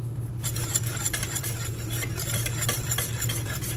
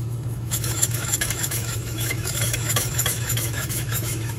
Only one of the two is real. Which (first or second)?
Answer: first